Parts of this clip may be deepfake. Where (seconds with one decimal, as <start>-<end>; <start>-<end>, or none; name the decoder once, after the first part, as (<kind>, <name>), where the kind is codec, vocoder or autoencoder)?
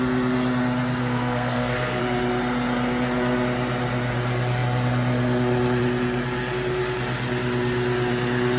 1.0-2.0 (codec, SNAC)